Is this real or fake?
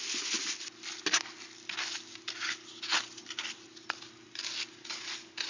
real